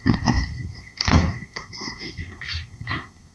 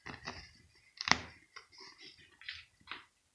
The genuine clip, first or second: second